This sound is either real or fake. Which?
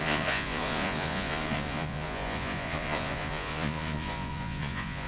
fake